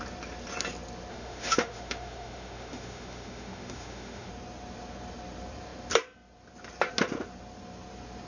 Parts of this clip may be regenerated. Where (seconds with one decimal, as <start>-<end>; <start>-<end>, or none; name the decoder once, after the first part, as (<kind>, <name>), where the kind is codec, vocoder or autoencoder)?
1.1-4.3 (autoencoder, DAC-VAE)